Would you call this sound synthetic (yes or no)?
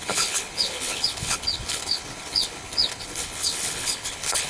yes